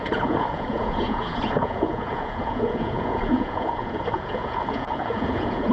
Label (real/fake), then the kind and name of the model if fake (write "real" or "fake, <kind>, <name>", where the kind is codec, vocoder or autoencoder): fake, vocoder, Vocos